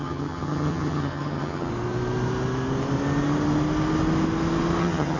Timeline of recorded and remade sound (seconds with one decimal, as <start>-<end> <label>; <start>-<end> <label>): 0.0-1.7 remade; 1.7-4.8 recorded; 4.8-5.2 remade